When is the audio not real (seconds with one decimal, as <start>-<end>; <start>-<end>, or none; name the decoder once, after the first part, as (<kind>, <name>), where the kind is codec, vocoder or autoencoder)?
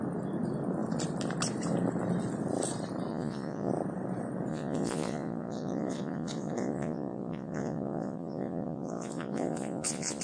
3.1-3.7 (vocoder, Vocos); 4.5-10.2